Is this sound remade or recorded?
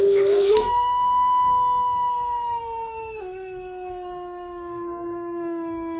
remade